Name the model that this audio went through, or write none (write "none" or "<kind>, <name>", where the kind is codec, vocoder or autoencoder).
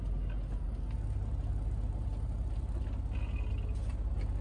none